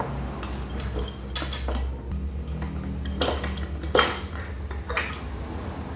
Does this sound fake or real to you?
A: real